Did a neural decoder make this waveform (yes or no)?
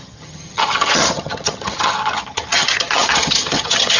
yes